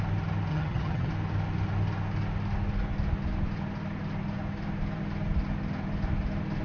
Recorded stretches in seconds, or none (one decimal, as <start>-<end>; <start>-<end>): 0.0-0.5; 1.1-6.6